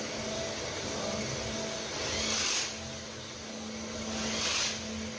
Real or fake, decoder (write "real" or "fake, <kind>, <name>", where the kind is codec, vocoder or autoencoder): real